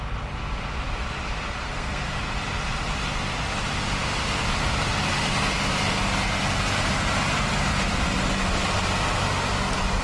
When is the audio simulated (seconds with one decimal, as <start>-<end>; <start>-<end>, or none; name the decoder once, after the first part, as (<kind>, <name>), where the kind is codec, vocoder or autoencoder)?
1.6-2.2 (codec, SNAC)